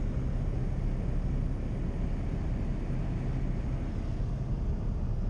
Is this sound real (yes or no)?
yes